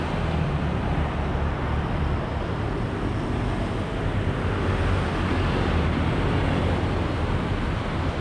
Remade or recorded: recorded